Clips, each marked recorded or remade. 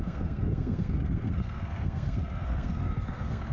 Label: remade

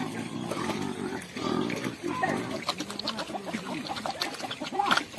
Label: recorded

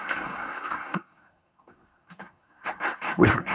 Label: remade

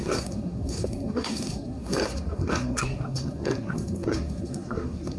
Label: remade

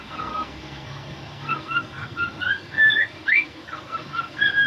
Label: remade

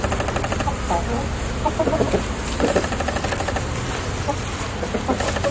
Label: recorded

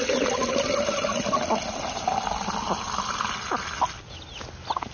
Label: recorded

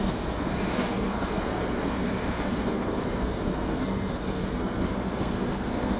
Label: remade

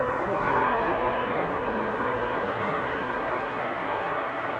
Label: remade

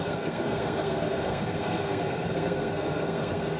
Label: remade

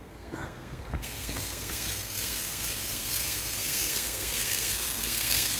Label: remade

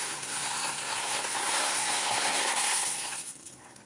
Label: remade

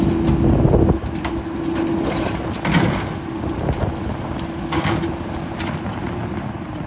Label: recorded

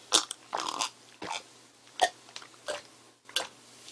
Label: recorded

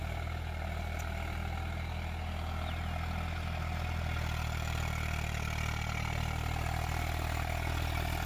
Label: recorded